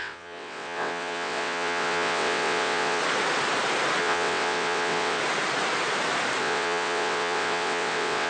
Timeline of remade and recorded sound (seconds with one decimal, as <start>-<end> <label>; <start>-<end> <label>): 0.0-3.0 remade; 3.0-4.0 recorded; 4.0-5.2 remade; 5.2-6.4 recorded; 6.4-8.3 remade